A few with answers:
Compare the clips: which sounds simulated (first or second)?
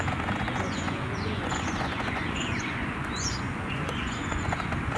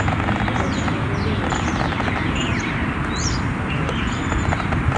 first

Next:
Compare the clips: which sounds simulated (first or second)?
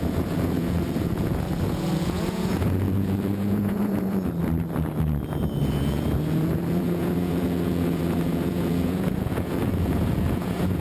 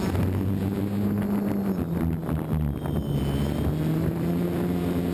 first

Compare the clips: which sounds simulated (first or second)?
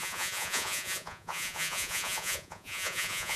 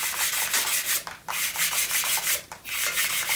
first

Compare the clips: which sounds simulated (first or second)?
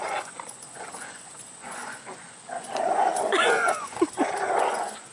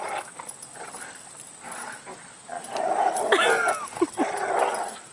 first